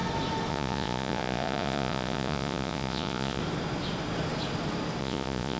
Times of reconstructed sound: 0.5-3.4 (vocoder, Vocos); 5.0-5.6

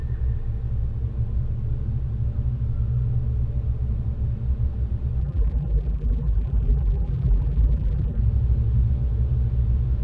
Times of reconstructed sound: 5.2-8.2 (vocoder, BigVGAN v2)

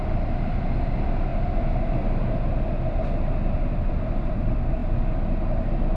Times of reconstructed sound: none